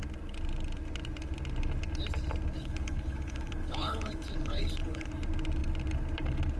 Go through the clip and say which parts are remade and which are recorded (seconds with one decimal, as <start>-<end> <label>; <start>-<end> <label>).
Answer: 0.0-2.6 recorded; 2.6-5.1 remade; 5.1-6.6 recorded

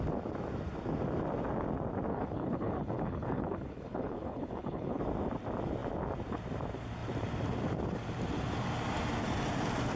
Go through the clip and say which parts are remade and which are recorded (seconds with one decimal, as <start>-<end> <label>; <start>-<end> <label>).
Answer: 0.0-2.1 recorded; 2.1-5.0 remade; 5.0-10.0 recorded